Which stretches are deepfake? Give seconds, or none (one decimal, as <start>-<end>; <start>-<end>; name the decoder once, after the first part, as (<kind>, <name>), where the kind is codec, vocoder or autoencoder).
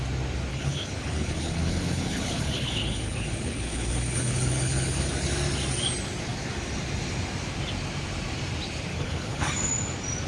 0.5-5.1 (codec, HILCodec); 8.9-9.7